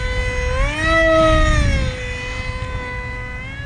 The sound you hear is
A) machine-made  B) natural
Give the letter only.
B